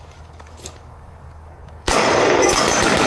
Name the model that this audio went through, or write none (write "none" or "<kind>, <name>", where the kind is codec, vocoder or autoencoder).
codec, DAC